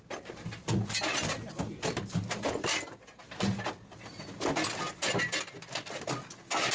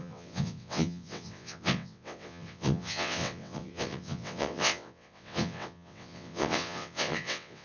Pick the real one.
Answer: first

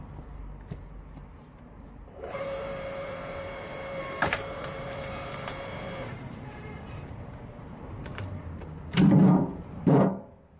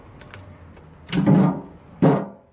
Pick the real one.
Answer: second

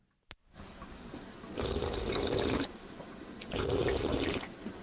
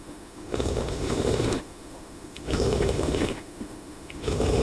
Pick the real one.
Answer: first